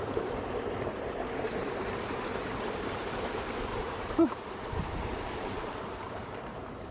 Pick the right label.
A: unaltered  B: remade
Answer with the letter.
B